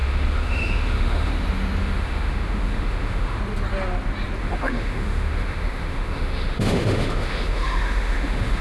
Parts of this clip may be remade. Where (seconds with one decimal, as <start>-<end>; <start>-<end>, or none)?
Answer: 0.0-1.3; 1.8-3.4; 4.4-8.6